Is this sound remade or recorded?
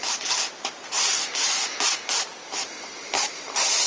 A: recorded